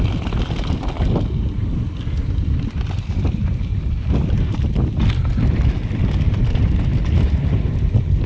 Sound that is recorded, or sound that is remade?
recorded